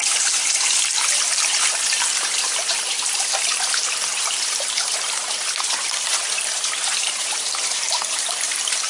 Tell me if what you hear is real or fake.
fake